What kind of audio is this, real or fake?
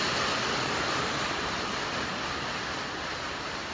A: real